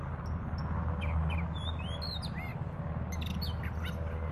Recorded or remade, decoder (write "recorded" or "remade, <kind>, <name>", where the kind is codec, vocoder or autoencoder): recorded